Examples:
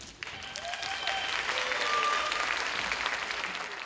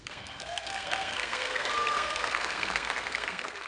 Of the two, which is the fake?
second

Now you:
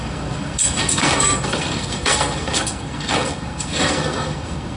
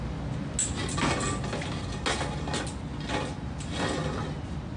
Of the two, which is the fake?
first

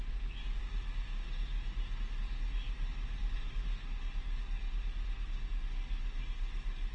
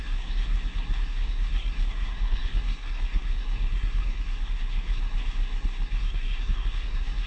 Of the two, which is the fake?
second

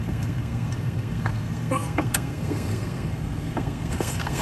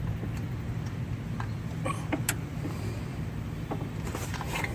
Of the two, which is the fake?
first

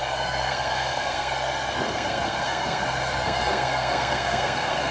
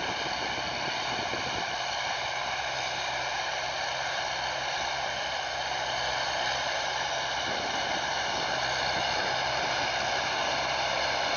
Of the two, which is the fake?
first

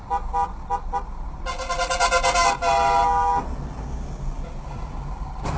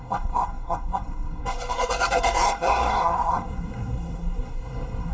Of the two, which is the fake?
second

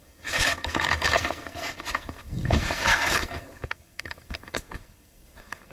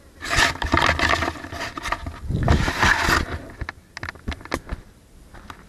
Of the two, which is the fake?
first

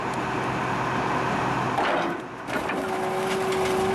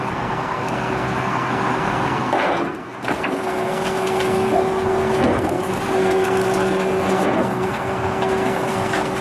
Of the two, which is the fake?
second